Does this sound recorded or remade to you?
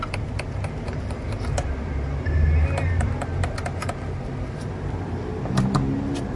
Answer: remade